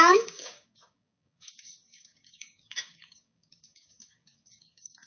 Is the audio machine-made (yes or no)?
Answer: yes